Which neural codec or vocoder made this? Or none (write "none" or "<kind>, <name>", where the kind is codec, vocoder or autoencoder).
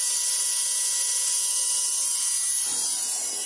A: none